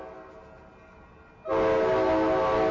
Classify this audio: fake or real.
real